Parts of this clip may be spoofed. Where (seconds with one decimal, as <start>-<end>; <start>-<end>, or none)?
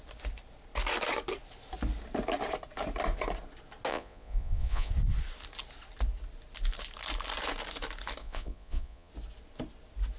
3.9-4.9; 8.2-9.1